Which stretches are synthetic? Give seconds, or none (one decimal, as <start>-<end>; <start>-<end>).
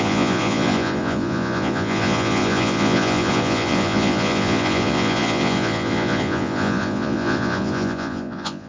0.0-8.7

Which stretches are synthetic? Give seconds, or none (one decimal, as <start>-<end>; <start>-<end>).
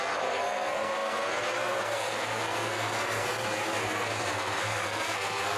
0.0-5.6